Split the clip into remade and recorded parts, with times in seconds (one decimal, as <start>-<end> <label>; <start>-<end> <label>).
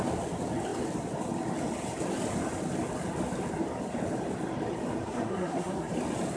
0.0-5.0 recorded; 5.0-5.9 remade; 5.9-6.4 recorded